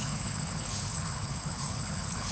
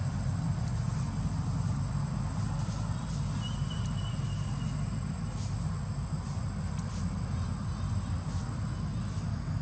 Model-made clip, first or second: first